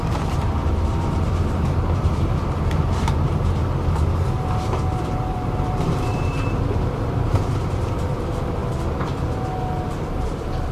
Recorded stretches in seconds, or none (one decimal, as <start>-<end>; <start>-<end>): 3.6-5.0; 8.6-10.1